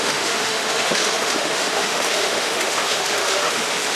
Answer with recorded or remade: remade